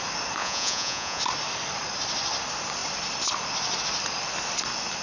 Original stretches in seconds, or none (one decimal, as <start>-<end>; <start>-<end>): 0.0-0.4; 1.2-5.0